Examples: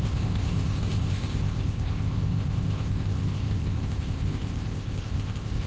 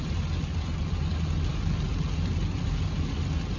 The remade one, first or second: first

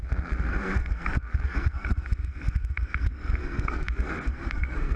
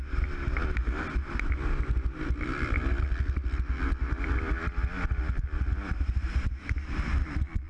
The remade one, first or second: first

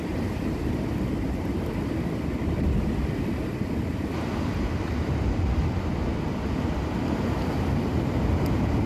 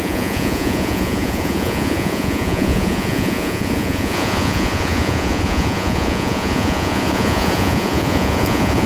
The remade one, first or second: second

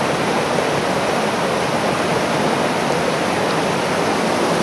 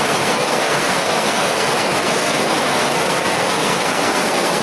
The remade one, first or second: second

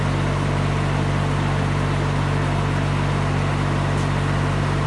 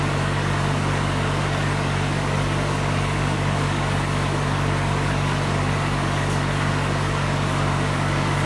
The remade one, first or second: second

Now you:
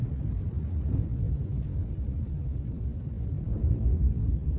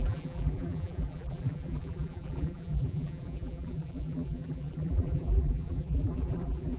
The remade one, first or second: second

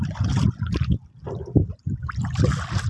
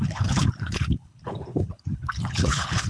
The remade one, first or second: second